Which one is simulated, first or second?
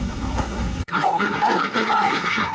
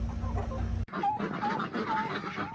first